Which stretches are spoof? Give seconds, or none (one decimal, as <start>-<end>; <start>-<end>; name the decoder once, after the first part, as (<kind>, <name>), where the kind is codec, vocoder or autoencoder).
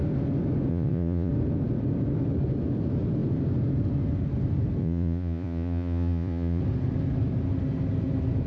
0.7-1.3 (vocoder, Vocos); 4.8-6.6